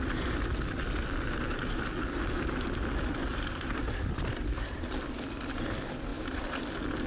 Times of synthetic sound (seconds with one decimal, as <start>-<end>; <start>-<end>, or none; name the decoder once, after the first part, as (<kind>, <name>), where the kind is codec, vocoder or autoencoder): 3.3-3.8 (vocoder, BigVGAN v2); 6.1-6.6